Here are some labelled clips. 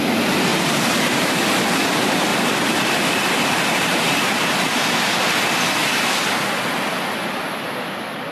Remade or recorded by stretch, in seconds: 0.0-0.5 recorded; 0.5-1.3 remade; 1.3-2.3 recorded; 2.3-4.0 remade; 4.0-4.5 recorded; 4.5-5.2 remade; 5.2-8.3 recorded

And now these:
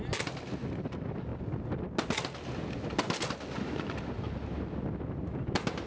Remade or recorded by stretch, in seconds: 0.0-5.9 recorded

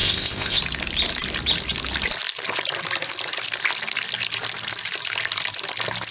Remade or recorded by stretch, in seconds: 0.0-0.6 remade; 0.6-6.1 recorded

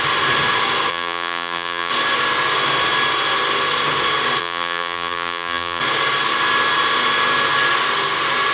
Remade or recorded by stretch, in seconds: 0.0-0.9 recorded; 0.9-1.9 remade; 1.9-4.4 recorded; 4.4-5.8 remade; 5.8-8.5 recorded

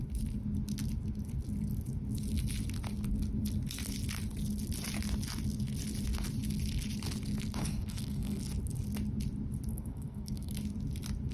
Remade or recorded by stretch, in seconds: 0.0-7.6 recorded; 7.6-8.4 remade; 8.4-9.7 recorded; 9.7-10.5 remade; 10.5-11.3 recorded

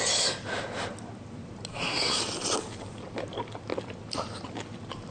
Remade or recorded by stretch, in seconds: 0.0-1.7 recorded; 1.7-2.2 remade; 2.2-5.1 recorded